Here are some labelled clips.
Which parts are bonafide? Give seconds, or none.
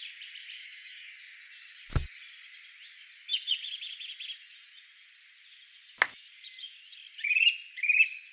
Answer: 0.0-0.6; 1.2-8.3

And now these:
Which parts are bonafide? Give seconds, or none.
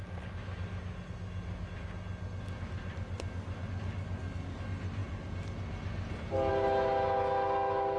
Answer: 0.0-8.0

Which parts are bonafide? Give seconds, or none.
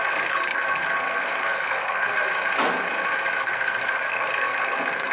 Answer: 2.2-3.4